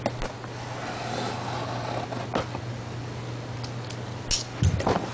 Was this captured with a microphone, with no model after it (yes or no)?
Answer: yes